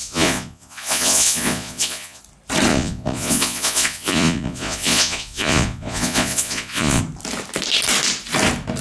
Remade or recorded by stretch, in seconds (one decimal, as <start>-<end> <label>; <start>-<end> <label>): 0.0-2.2 remade; 2.2-2.7 recorded; 2.7-7.0 remade; 7.0-8.8 recorded